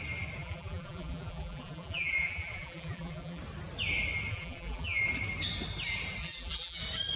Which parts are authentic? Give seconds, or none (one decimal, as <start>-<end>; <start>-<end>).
0.0-0.4; 3.4-4.3; 5.0-6.2; 6.8-7.2